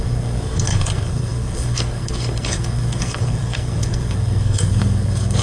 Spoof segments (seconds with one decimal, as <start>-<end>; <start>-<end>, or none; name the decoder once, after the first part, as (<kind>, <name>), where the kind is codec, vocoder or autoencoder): 0.0-5.4 (codec, SNAC)